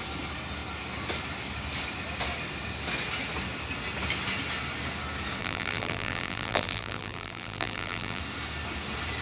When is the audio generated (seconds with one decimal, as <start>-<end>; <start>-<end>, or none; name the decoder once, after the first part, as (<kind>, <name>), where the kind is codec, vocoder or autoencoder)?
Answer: 5.4-8.2 (vocoder, BigVGAN v2)